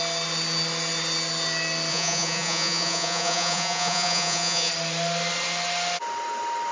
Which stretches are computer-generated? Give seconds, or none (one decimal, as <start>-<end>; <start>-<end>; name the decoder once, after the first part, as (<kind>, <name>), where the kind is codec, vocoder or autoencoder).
1.9-4.7 (vocoder, Vocos)